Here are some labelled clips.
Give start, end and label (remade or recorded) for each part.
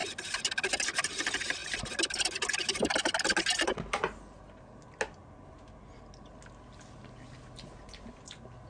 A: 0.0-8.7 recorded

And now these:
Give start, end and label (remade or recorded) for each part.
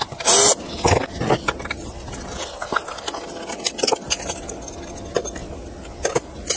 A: 0.0-6.6 recorded